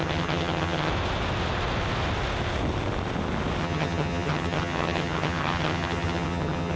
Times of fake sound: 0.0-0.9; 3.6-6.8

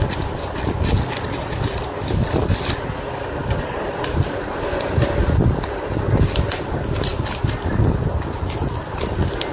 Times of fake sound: none

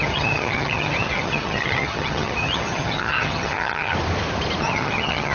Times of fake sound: 0.0-3.9; 4.6-5.3

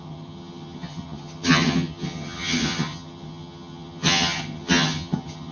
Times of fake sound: 0.0-5.5